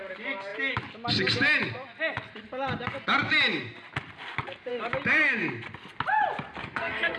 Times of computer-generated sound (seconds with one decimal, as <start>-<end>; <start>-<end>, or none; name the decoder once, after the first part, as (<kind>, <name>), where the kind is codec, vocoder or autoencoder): 6.6-7.2 (codec, SNAC)